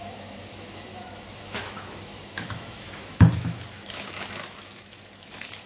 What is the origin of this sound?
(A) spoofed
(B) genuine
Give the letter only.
A